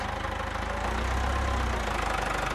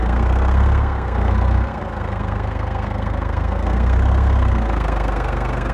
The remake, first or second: second